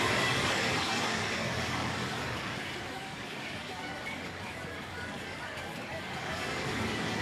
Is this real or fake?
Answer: fake